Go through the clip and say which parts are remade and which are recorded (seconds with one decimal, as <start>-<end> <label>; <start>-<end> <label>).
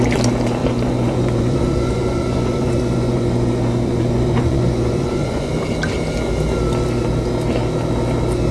0.0-0.6 recorded; 0.6-5.5 remade; 5.5-8.5 recorded